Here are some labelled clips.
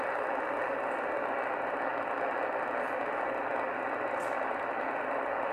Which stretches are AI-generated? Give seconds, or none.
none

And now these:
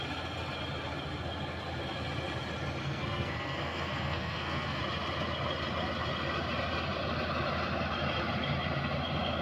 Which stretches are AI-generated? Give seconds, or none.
2.8-4.8

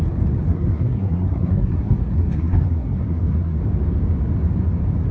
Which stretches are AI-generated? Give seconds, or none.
0.5-3.6

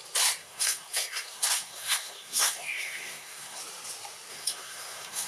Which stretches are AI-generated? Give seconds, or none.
0.4-3.6; 4.3-5.3

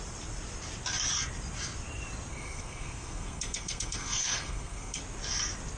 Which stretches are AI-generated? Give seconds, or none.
2.3-5.0